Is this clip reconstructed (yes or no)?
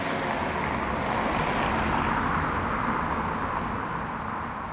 no